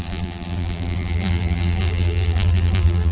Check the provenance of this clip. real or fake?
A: fake